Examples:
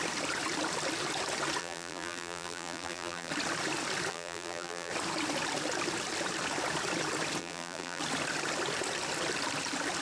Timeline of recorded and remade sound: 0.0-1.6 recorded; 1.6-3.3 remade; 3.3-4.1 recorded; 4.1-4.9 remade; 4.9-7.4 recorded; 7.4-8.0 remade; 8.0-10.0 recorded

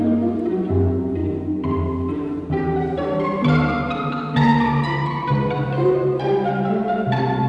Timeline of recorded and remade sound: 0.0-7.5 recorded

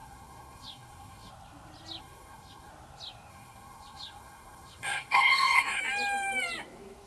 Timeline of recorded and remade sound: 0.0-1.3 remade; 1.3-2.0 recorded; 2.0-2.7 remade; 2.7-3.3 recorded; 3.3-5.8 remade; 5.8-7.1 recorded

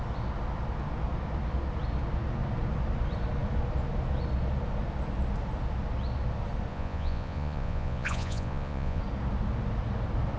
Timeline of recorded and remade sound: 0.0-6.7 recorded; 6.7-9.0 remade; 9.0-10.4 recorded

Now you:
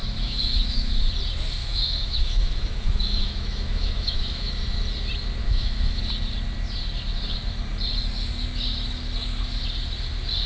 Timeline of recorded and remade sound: 0.0-1.1 remade; 1.1-1.6 recorded; 1.6-4.5 remade; 4.5-5.4 recorded; 5.4-6.0 remade; 6.0-10.5 recorded

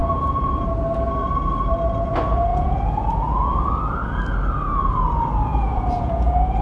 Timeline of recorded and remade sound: 0.0-2.5 recorded; 2.5-3.7 remade; 3.7-5.5 recorded; 5.5-6.6 remade